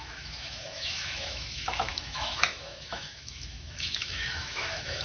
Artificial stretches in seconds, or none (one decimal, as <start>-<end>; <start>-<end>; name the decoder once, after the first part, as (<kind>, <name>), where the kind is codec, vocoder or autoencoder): 0.0-5.0 (autoencoder, DAC-VAE)